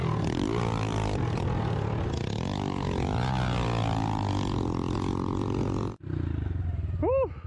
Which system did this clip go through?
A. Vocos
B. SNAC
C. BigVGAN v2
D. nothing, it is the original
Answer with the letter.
D